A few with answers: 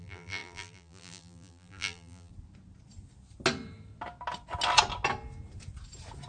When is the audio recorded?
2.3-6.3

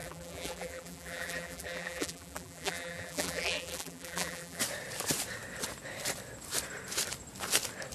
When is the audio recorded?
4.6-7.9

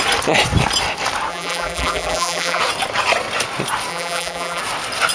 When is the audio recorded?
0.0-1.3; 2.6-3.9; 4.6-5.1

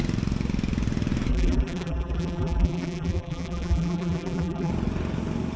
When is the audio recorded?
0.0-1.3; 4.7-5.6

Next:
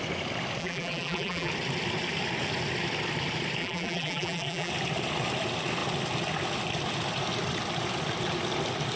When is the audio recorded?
0.0-0.6; 1.5-3.6; 4.7-9.0

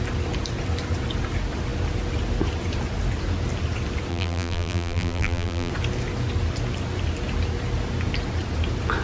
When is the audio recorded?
0.0-4.1; 5.7-9.0